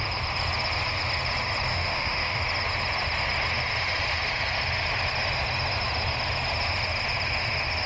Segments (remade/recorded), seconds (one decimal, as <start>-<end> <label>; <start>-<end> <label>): 0.0-1.7 recorded; 1.7-2.4 remade; 2.4-7.9 recorded